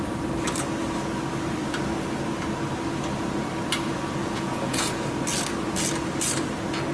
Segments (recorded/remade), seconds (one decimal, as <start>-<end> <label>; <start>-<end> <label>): 0.0-4.2 recorded; 4.2-4.9 remade; 4.9-6.9 recorded